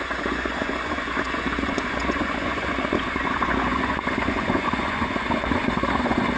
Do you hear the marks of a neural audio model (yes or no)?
yes